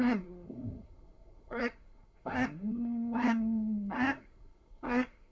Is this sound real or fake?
fake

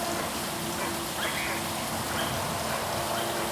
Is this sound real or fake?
real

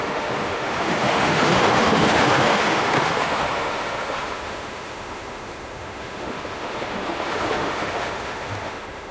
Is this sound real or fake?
fake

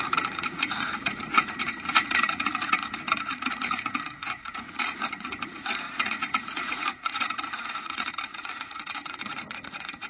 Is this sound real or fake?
fake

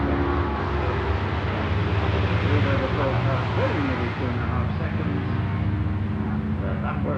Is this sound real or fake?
real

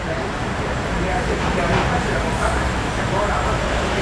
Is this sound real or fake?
fake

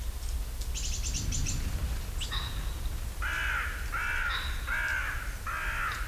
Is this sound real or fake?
real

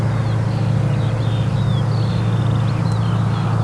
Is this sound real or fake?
real